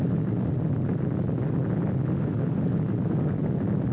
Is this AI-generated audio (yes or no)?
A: no